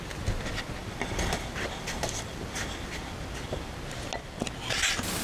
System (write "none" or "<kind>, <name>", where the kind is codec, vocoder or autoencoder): none